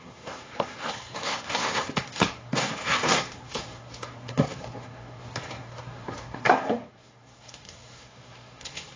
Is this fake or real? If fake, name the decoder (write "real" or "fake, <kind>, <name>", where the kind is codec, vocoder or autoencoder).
fake, codec, SNAC